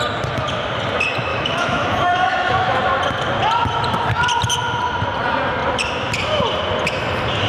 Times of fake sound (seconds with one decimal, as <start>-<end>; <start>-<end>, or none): 1.3-2.8